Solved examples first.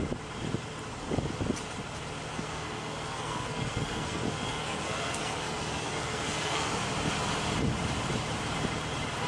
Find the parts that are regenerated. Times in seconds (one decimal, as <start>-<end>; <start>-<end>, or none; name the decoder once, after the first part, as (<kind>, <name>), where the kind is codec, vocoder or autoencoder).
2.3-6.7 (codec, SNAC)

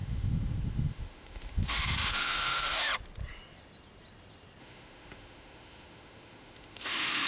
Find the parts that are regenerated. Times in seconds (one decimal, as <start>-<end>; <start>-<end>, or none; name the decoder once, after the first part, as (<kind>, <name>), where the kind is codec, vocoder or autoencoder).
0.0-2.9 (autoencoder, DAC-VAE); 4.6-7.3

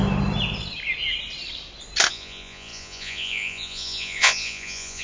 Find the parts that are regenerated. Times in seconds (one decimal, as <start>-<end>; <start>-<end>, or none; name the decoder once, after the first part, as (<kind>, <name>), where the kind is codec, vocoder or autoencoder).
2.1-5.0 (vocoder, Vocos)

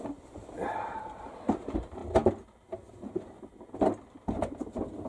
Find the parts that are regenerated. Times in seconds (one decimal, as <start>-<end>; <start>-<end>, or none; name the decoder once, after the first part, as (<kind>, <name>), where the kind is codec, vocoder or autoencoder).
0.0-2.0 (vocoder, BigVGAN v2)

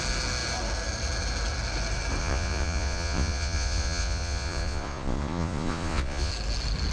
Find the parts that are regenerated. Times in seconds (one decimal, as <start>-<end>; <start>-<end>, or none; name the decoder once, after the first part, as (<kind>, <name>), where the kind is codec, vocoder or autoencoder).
2.2-6.3 (vocoder, Vocos)

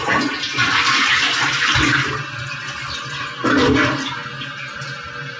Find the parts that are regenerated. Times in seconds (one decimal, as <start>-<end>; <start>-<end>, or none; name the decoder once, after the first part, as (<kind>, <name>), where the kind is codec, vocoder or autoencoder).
none

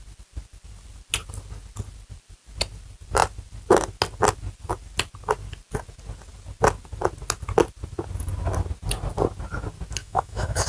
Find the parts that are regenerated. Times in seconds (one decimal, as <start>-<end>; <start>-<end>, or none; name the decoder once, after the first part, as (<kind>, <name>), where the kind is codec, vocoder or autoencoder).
10.0-10.7 (autoencoder, DAC-VAE)

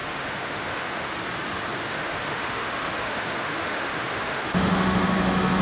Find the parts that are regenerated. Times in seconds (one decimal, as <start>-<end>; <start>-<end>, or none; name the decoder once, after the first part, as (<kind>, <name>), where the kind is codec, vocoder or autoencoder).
0.0-1.1 (autoencoder, DAC-VAE); 1.8-5.6